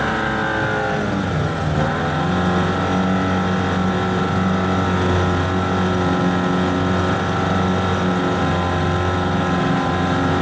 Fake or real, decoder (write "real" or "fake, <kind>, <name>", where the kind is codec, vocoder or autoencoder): real